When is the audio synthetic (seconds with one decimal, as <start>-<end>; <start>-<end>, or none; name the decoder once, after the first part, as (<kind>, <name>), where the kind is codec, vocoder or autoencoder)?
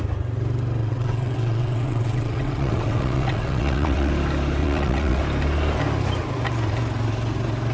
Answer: 0.8-4.1 (vocoder, WaveNeXt); 4.6-5.2